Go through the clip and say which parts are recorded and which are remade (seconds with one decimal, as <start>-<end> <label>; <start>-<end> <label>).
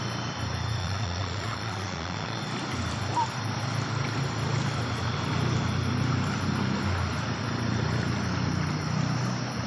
0.0-0.8 recorded; 0.8-2.4 remade; 2.4-9.7 recorded